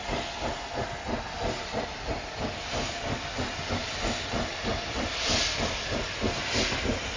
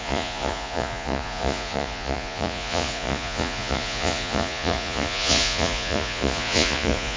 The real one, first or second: first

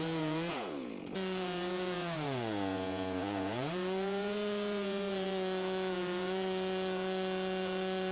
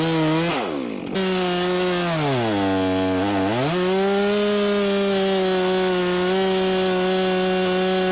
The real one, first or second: second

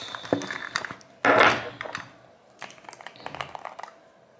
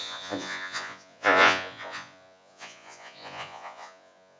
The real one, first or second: first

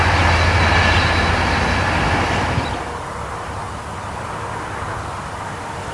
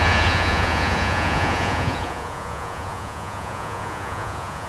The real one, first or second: first